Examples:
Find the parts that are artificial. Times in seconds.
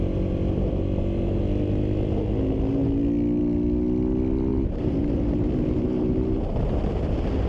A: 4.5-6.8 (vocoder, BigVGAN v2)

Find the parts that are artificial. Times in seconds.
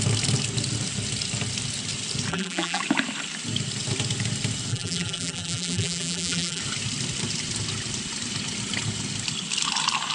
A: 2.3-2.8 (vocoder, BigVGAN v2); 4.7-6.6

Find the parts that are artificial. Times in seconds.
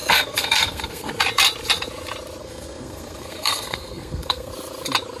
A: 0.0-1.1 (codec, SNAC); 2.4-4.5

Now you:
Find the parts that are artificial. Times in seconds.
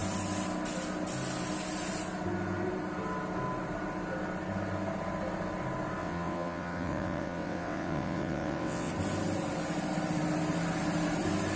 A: 6.0-8.9 (vocoder, WaveNeXt)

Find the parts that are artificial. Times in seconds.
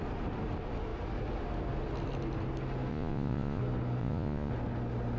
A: 2.9-3.6 (vocoder, Vocos); 4.0-4.5